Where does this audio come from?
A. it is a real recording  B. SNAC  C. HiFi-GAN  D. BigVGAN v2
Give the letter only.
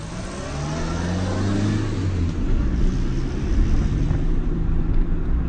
A